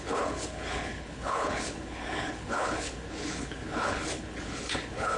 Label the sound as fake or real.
fake